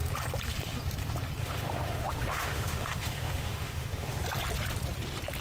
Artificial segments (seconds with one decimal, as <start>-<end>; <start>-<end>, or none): 1.4-4.2